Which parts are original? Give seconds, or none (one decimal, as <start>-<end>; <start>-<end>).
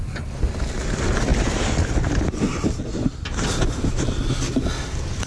0.0-5.3